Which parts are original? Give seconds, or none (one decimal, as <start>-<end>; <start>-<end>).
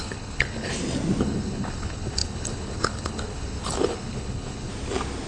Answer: 0.7-1.2; 4.7-5.3